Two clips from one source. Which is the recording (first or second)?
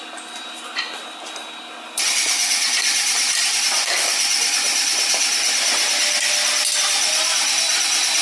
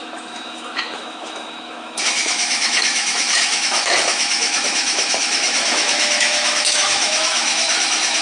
first